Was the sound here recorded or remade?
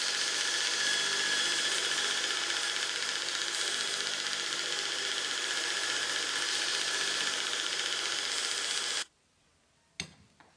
recorded